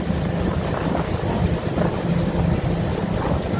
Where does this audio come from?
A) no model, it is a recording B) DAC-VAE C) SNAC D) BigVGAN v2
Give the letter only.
D